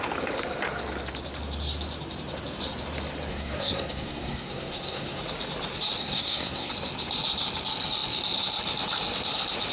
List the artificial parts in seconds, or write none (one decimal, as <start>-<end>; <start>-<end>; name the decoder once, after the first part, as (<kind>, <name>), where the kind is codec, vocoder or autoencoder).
3.3-5.2 (codec, SNAC); 6.0-6.7